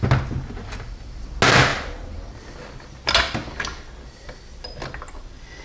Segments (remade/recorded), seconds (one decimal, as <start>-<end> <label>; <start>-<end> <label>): 0.0-5.6 recorded